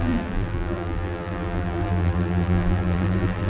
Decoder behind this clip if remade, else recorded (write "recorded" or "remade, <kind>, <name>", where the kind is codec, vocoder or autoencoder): remade, vocoder, BigVGAN v2